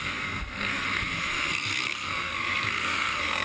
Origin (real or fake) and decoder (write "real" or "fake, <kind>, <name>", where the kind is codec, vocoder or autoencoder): fake, codec, SNAC